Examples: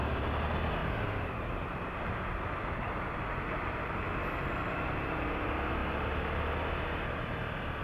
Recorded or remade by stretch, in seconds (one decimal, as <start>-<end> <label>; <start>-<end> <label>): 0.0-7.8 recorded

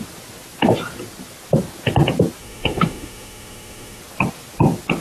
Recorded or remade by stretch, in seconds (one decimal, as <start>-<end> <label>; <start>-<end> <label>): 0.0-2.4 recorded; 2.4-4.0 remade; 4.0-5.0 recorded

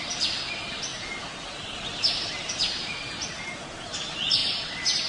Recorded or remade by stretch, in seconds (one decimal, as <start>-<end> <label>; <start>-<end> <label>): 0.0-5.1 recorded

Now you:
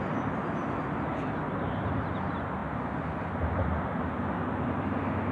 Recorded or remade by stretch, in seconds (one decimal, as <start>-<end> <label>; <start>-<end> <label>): 0.0-5.3 recorded

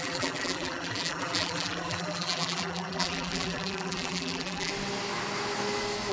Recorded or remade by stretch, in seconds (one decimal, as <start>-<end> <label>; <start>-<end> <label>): 0.0-4.7 remade; 4.7-6.1 recorded

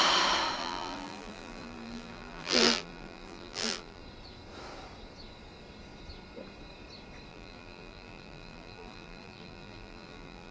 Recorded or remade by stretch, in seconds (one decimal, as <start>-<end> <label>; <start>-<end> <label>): 0.0-0.6 recorded; 0.6-4.0 remade; 4.0-7.3 recorded; 7.3-10.5 remade

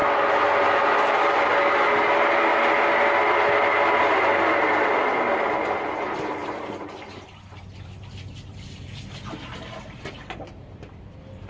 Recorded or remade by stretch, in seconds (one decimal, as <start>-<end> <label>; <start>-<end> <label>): 0.0-0.7 recorded; 0.7-2.5 remade; 2.5-4.5 recorded; 4.5-6.4 remade; 6.4-10.1 recorded; 10.1-11.5 remade